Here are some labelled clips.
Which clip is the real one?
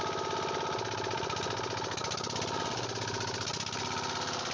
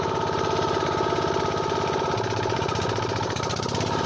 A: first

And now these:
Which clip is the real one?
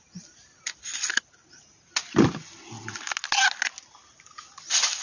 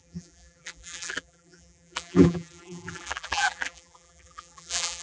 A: first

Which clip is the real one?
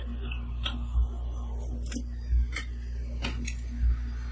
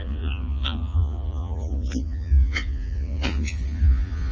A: first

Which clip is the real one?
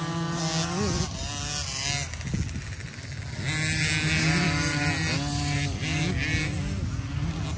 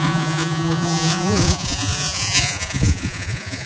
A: first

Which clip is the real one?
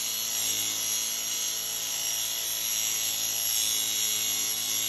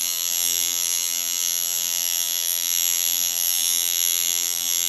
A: first